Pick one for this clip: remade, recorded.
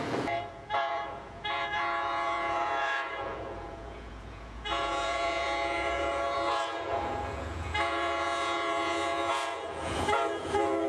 remade